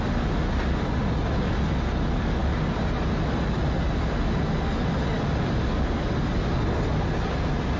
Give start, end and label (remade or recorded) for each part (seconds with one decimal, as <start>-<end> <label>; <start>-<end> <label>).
0.0-7.8 recorded